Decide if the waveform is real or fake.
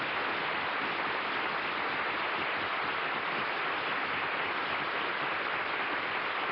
real